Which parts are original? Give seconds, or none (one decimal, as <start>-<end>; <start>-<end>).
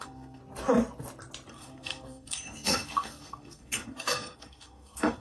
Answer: 0.4-1.5